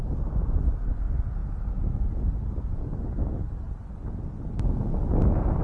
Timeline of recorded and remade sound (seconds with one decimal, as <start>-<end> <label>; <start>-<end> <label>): 0.0-5.6 recorded